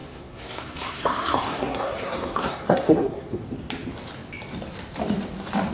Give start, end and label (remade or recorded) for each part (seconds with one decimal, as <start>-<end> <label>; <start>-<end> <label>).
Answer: 0.0-3.4 remade; 3.4-5.7 recorded